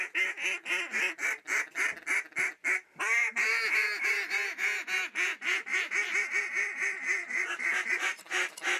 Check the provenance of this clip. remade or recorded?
recorded